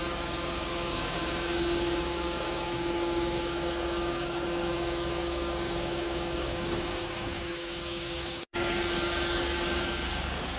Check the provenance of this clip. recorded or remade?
remade